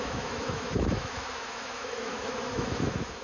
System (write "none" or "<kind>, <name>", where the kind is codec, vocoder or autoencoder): autoencoder, DAC-VAE